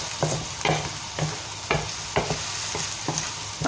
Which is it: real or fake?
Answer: real